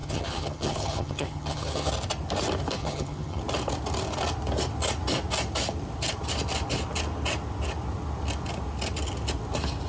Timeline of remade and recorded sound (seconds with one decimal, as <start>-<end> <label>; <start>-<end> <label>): 0.0-1.9 remade; 1.9-2.8 recorded; 2.8-3.4 remade; 3.4-9.9 recorded